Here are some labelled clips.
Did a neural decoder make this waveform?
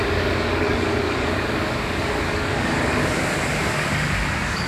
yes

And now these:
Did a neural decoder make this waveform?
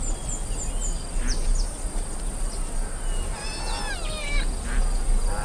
no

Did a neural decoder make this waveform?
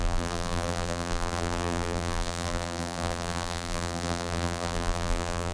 yes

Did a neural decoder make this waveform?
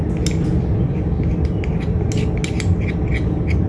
no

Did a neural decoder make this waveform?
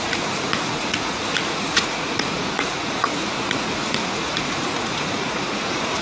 yes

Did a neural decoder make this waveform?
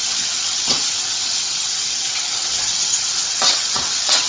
yes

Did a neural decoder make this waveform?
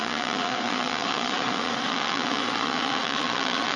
yes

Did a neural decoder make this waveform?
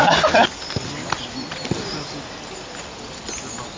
yes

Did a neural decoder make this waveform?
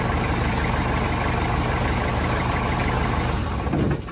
no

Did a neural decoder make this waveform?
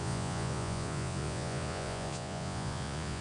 yes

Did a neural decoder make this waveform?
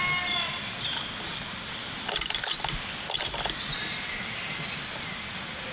no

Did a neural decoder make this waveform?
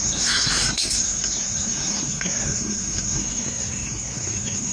yes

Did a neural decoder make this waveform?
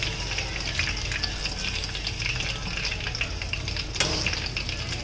no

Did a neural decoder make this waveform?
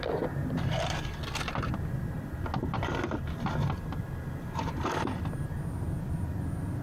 no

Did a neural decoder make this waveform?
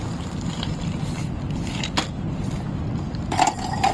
no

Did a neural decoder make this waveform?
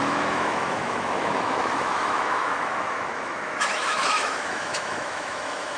yes